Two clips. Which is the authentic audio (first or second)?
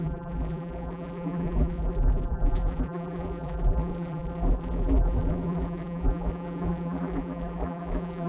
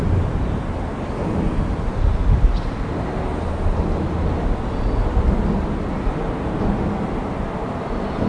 second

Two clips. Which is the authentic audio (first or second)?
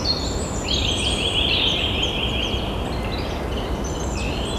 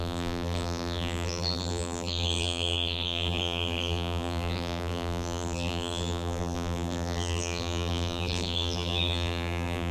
first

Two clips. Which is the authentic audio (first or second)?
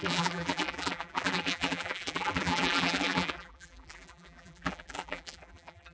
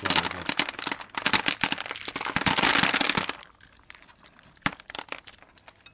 second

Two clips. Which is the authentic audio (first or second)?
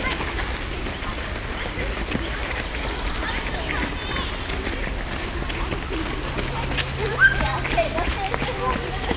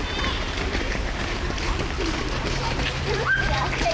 first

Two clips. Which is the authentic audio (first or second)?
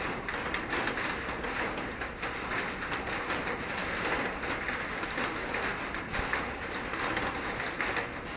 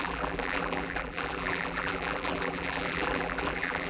first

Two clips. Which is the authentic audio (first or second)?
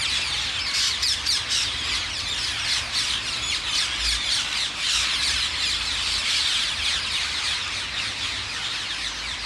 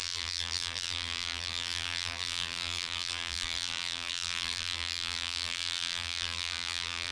first